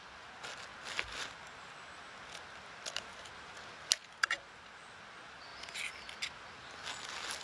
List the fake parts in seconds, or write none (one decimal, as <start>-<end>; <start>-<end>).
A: none